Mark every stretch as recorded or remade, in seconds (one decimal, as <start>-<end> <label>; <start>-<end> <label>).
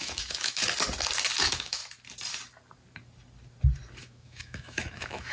0.0-0.6 remade; 0.6-1.4 recorded; 1.4-1.8 remade; 1.8-4.0 recorded; 4.0-5.3 remade